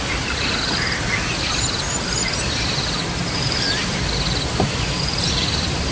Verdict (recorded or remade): recorded